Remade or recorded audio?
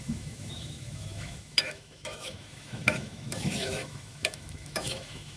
remade